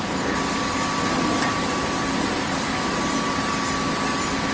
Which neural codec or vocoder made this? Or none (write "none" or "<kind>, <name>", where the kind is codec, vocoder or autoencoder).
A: none